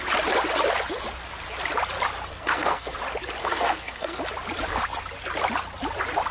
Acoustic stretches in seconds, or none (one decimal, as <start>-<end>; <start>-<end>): 0.0-2.3; 3.0-3.4; 4.2-6.3